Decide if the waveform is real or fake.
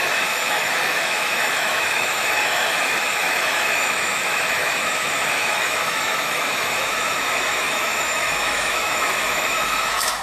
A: fake